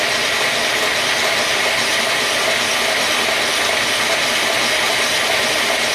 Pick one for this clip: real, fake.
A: real